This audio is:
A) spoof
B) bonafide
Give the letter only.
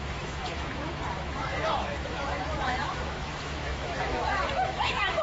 A